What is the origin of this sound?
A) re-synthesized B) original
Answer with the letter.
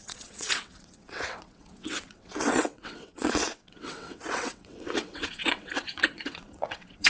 A